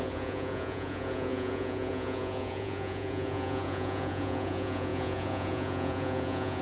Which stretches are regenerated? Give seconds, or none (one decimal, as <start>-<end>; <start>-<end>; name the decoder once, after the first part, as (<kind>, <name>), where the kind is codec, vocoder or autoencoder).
0.0-6.6 (vocoder, Vocos)